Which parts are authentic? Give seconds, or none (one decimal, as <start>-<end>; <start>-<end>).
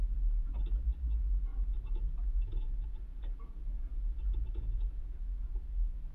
0.0-1.5; 5.2-6.1